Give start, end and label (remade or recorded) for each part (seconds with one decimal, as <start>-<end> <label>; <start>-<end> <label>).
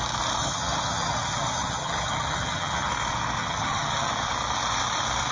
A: 0.0-0.4 recorded; 0.4-2.9 remade; 2.9-3.4 recorded; 3.4-4.1 remade; 4.1-5.3 recorded